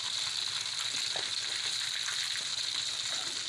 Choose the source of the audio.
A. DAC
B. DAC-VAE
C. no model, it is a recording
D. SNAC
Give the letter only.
C